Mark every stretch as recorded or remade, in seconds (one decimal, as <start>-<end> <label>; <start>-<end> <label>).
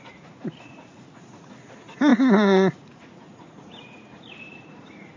0.0-5.2 remade